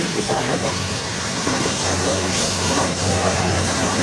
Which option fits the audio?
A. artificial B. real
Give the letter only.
A